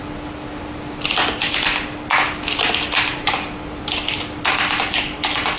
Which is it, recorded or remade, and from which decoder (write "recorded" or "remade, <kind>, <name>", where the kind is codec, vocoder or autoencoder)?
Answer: recorded